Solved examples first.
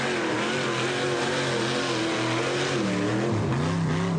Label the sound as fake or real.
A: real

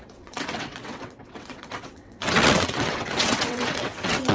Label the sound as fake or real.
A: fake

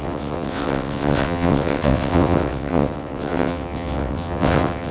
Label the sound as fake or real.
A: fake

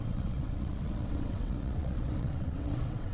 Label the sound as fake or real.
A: fake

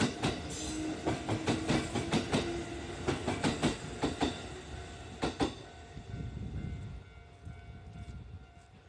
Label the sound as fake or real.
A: real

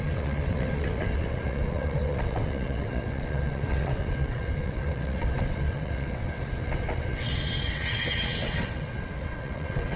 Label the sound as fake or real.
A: fake